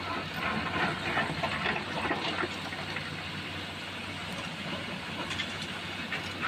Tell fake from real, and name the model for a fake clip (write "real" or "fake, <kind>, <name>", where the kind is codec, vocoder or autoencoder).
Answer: real